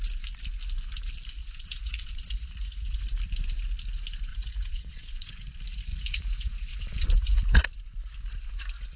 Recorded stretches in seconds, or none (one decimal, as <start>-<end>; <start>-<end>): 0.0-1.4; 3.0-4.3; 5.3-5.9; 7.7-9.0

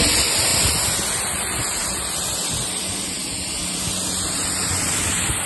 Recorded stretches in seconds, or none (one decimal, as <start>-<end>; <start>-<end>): 0.0-5.5

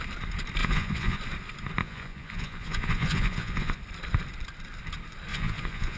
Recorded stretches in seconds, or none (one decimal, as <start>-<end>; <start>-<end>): 0.0-0.6; 1.2-1.8; 3.8-5.3